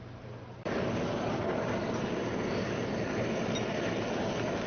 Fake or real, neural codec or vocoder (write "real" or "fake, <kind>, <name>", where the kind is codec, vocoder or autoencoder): real